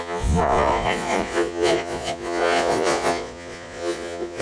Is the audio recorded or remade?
remade